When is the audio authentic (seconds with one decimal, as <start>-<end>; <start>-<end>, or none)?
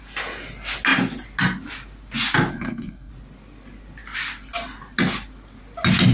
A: 0.0-2.5; 3.1-6.1